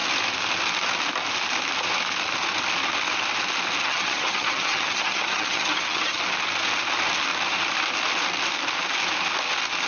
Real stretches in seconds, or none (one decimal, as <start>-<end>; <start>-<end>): 0.0-3.8; 6.2-9.9